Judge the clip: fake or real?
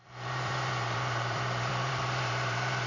fake